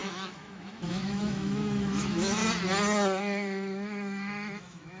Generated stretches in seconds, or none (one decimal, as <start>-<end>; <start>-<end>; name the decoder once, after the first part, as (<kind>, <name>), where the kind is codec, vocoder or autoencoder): 0.0-2.4 (autoencoder, DAC-VAE); 3.2-5.0